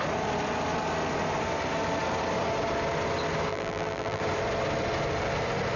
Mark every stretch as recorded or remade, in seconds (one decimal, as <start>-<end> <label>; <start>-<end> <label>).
0.0-3.5 recorded; 3.5-4.2 remade; 4.2-5.8 recorded